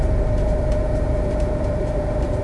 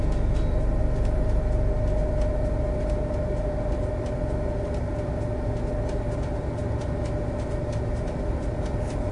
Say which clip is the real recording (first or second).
second